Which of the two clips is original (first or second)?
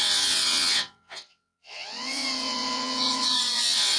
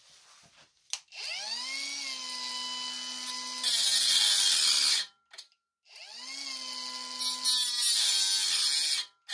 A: second